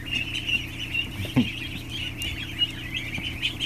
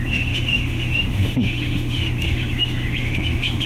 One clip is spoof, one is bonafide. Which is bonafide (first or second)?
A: first